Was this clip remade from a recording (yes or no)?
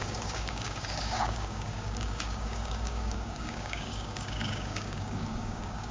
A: yes